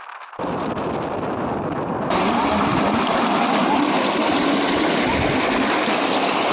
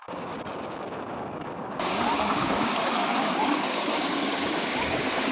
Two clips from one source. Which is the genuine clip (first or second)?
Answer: first